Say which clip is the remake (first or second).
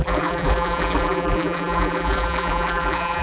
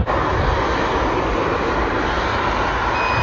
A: first